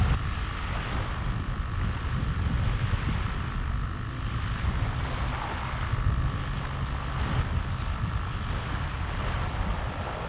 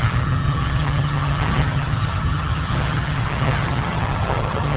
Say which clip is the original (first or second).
first